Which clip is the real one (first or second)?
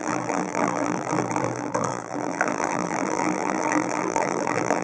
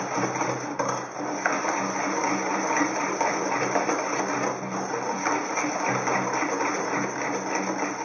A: second